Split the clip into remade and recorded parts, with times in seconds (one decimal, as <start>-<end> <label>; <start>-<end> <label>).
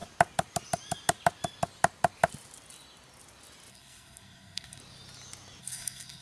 0.0-3.7 recorded; 3.7-4.8 remade; 4.8-5.6 recorded; 5.6-6.2 remade